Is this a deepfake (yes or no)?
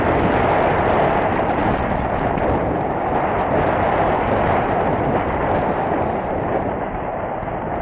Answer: no